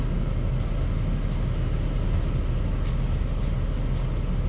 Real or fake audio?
real